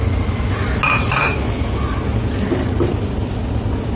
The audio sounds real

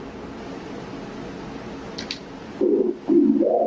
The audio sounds real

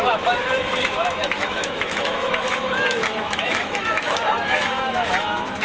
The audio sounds fake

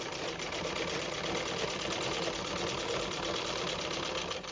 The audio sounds real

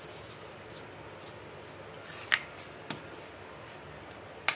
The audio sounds real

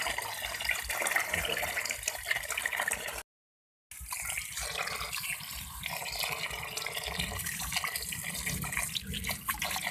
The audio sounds real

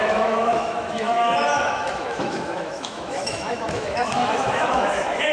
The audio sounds fake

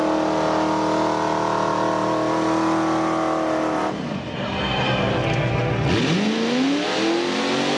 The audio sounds real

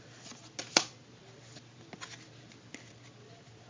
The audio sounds real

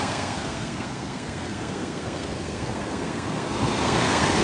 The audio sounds fake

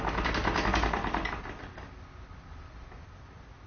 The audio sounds real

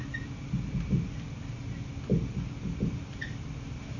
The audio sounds real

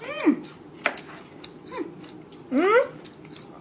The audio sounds real